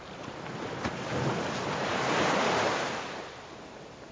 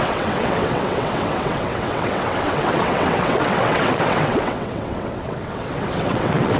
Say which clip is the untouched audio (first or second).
first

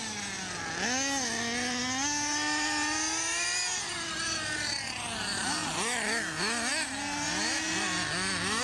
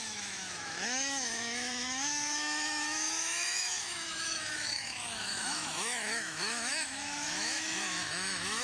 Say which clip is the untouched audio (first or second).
first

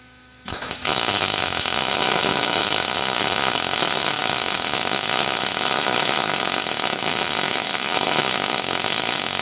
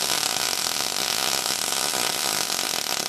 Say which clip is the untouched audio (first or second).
second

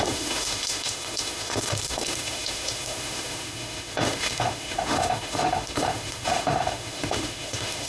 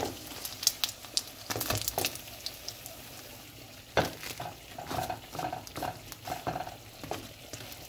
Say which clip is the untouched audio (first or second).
second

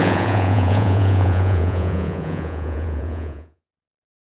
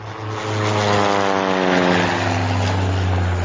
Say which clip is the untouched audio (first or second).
second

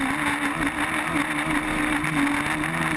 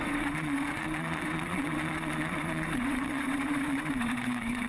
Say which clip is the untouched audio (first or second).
first